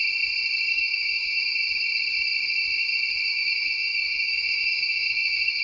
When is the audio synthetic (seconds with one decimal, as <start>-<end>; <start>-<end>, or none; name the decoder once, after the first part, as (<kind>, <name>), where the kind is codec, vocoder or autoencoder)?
0.7-1.4 (autoencoder, DAC-VAE); 3.3-5.6

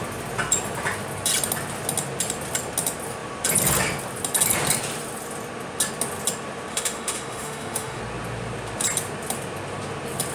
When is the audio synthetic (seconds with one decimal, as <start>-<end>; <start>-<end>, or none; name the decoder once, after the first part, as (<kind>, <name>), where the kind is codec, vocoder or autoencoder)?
6.7-8.0 (autoencoder, DAC-VAE)

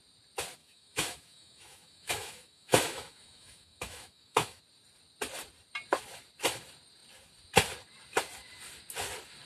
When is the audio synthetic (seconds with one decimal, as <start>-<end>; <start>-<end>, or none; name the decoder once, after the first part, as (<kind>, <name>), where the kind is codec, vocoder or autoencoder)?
0.6-4.6 (autoencoder, DAC-VAE)

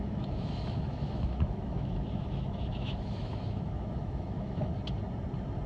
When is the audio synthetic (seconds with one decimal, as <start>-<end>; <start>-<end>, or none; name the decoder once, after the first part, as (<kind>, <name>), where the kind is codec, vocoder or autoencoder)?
0.0-4.7 (autoencoder, DAC-VAE)

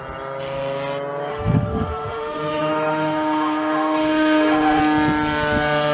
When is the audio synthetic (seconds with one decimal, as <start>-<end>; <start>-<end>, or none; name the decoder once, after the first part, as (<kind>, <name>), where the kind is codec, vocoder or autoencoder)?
1.3-4.8 (autoencoder, DAC-VAE)

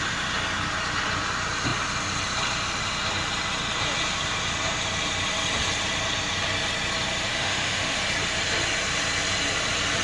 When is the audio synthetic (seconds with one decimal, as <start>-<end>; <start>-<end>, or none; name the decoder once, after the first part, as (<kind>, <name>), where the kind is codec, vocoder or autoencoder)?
7.3-8.0 (autoencoder, DAC-VAE)

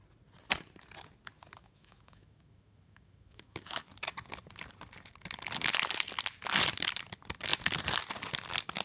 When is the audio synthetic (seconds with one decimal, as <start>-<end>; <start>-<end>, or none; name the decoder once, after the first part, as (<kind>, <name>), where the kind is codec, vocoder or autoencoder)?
1.6-3.9 (autoencoder, DAC-VAE)